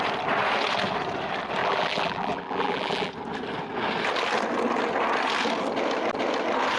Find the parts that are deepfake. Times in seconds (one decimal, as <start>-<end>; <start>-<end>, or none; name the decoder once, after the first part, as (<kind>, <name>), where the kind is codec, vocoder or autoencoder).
1.6-3.1 (vocoder, BigVGAN v2)